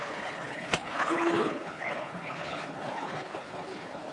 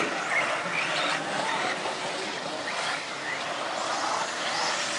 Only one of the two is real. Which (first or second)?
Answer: second